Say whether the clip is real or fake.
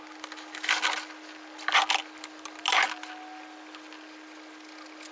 real